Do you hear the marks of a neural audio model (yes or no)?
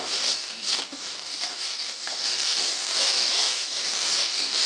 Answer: yes